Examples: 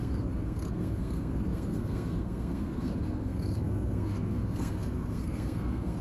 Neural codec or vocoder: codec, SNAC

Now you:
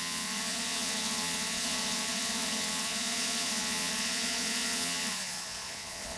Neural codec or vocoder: vocoder, Vocos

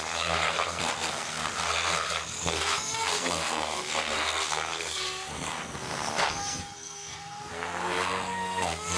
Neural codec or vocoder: codec, SNAC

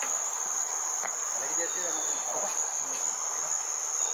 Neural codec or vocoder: none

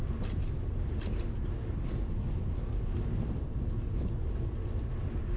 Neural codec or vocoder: none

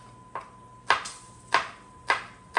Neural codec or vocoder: none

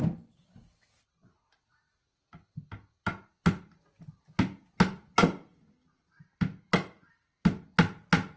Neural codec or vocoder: none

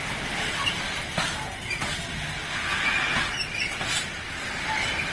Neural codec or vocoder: none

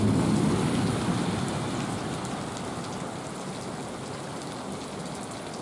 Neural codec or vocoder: none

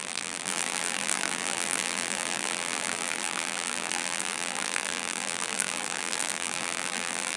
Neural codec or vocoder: vocoder, BigVGAN v2